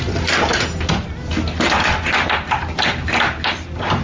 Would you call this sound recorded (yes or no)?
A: yes